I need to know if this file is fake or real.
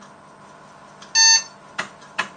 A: real